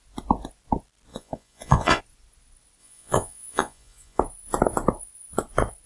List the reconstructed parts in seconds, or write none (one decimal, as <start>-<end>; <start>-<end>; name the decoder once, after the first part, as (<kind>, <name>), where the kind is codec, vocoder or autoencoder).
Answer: 1.1-2.0 (vocoder, Vocos); 2.8-4.2